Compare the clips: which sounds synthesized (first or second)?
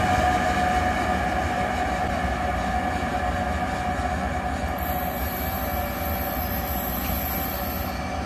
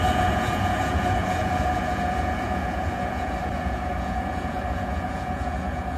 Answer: second